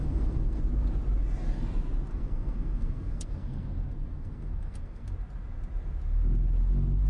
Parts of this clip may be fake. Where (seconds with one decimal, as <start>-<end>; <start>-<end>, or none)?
0.0-0.6; 2.1-5.1